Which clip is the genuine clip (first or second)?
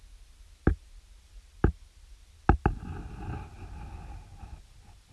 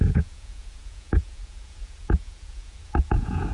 first